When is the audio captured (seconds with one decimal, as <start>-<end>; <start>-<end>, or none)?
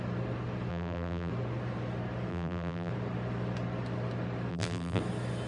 0.0-0.7; 1.3-2.3; 2.9-4.5; 5.0-5.5